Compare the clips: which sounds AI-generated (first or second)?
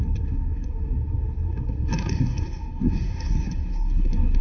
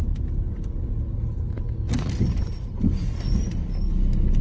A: first